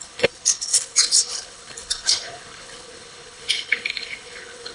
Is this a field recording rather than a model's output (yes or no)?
no